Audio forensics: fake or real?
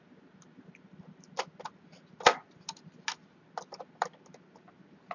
real